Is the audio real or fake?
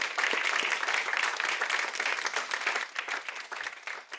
real